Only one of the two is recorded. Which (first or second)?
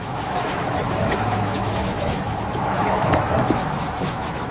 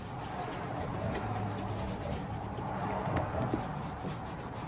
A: second